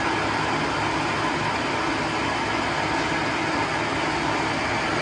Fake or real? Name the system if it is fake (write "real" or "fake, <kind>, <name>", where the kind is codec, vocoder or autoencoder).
real